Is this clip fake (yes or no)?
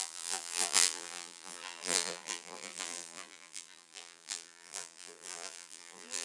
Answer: yes